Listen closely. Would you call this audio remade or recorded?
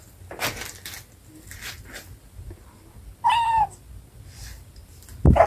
recorded